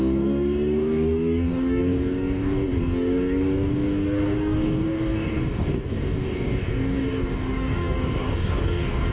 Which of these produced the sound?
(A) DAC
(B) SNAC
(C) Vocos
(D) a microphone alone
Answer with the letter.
A